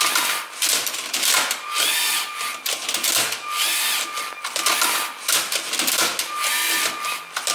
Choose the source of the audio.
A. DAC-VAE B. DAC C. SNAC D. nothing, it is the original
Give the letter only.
D